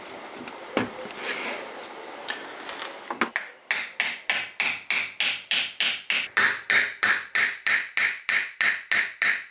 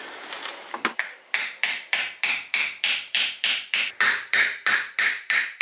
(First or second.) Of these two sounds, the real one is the first